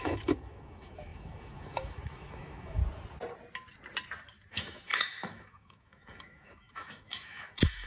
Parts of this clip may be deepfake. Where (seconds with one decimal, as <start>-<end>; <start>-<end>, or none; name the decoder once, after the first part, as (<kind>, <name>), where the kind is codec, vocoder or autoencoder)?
0.0-2.8 (autoencoder, DAC-VAE); 4.5-7.9